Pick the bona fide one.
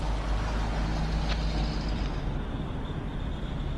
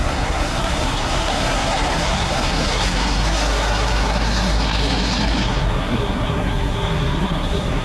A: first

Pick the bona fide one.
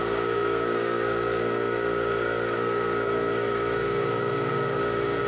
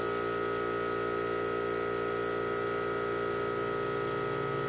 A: second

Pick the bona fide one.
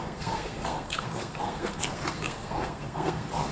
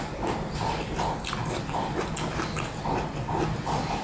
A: second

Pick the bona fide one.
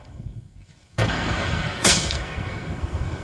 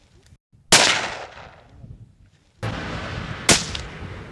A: second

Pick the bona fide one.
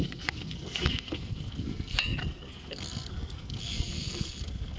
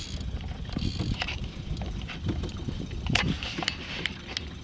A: second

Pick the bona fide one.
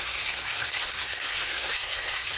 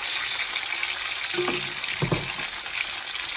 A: second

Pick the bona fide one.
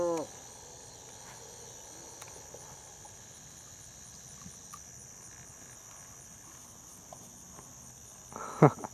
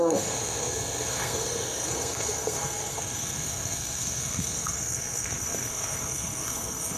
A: first